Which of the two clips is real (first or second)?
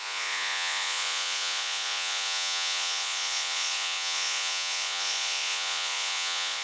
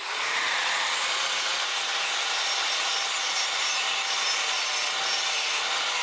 second